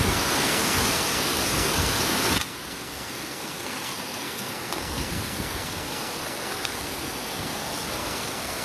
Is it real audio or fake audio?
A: fake